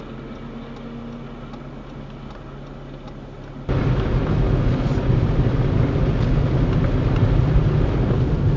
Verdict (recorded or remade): recorded